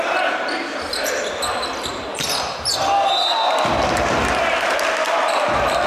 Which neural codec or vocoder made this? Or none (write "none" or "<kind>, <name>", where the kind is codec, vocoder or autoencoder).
none